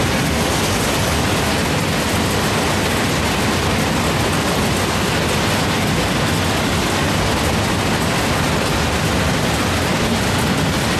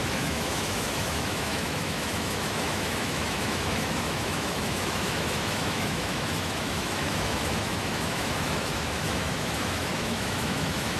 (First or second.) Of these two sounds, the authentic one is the first